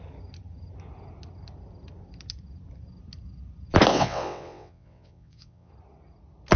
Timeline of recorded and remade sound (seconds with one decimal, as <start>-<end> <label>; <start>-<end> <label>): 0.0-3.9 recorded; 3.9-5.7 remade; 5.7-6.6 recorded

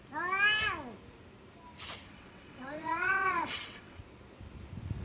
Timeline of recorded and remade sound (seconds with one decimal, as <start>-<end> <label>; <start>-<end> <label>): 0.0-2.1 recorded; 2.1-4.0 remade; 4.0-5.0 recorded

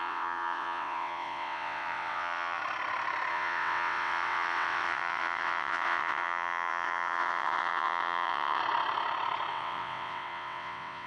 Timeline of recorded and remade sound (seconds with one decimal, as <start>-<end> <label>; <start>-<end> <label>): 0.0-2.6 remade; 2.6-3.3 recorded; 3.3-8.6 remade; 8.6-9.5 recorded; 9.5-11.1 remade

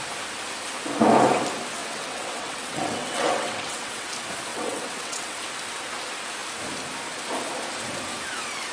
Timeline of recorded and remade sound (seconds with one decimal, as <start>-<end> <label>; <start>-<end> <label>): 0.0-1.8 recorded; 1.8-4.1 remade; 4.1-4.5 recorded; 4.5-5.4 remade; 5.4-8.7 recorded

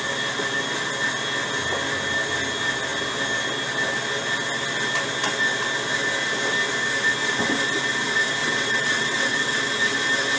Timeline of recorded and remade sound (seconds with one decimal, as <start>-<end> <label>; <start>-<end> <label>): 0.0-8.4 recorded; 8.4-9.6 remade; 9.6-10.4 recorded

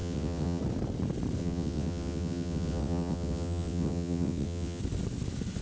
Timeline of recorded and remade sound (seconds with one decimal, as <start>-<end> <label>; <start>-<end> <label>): 0.0-0.6 remade; 0.6-1.4 recorded; 1.4-4.8 remade; 4.8-5.6 recorded